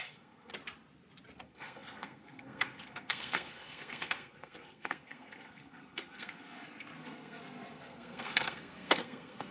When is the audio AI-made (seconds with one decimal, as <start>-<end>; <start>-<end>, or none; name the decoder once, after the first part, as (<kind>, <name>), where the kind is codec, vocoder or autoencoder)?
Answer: 0.0-0.5 (codec, SNAC); 1.4-9.5